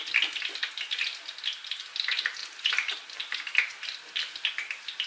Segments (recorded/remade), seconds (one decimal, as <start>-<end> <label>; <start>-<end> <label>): 0.0-5.1 recorded